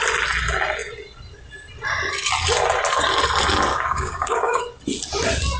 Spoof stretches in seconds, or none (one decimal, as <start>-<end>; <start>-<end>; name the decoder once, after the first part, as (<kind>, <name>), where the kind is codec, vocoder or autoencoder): 3.7-4.6 (codec, DAC)